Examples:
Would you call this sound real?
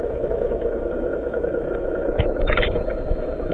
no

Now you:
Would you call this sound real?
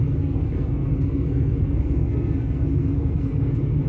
no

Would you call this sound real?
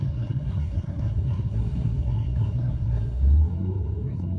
no